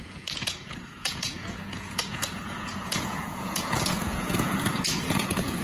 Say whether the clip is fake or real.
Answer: fake